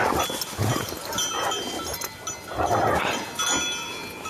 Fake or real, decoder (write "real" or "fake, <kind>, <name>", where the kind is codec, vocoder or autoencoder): real